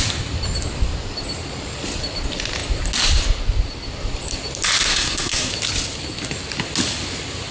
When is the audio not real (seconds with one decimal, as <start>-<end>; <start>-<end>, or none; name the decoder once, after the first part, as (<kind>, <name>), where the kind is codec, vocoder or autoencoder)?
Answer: 4.9-5.5 (codec, SNAC)